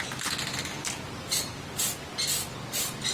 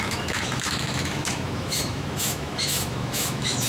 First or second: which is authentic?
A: first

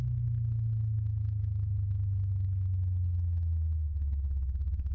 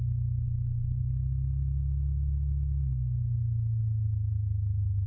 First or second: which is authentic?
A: second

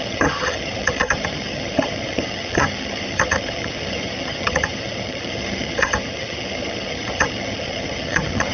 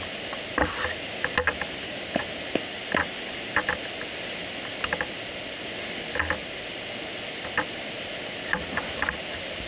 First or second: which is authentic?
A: second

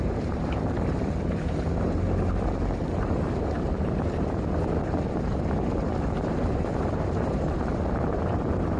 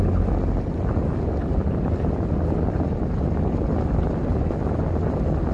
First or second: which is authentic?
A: second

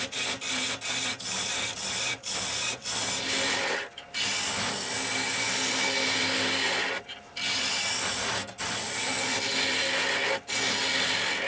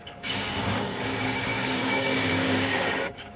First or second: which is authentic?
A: first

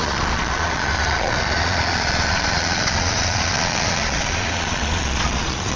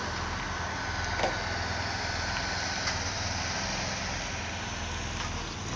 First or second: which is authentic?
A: second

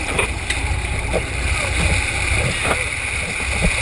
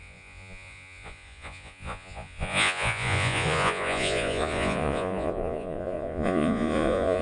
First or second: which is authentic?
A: first